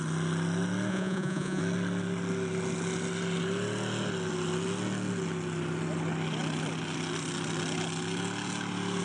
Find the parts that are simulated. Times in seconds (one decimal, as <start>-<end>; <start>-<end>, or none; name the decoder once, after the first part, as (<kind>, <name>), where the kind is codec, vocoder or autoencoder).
0.9-1.6 (vocoder, Vocos)